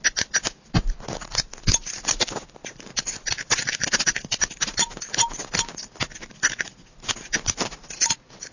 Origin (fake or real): real